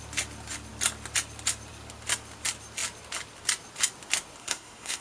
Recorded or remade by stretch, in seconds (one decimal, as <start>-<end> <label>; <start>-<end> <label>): 0.0-4.4 recorded; 4.4-5.0 remade